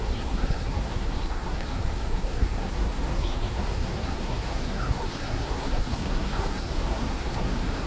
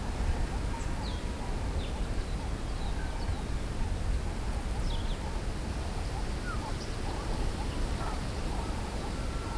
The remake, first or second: first